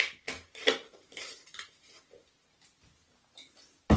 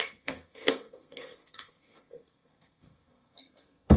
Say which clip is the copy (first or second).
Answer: second